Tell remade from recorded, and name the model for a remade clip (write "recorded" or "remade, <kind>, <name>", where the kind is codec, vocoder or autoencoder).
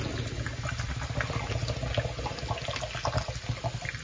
recorded